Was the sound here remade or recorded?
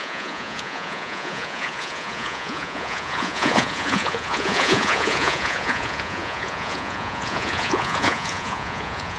remade